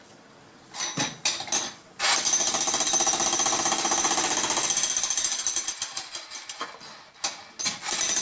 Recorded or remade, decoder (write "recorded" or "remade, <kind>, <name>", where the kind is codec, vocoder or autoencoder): recorded